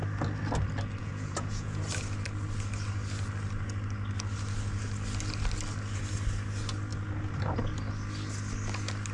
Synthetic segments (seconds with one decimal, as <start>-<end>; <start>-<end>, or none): 1.0-1.8